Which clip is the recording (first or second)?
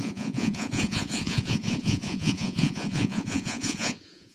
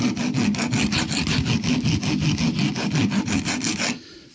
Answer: second